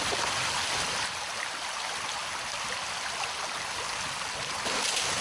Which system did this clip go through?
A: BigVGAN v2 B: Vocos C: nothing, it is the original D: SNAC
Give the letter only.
C